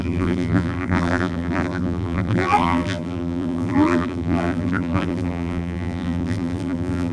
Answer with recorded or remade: remade